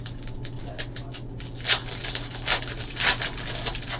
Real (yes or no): yes